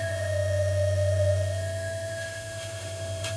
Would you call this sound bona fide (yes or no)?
no